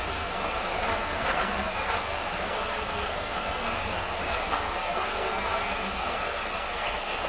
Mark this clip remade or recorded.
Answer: remade